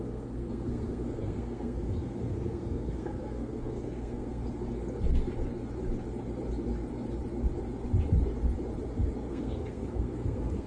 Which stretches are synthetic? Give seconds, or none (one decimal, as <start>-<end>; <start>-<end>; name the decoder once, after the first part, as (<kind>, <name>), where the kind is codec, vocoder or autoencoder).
0.0-4.4 (codec, SNAC); 9.3-10.7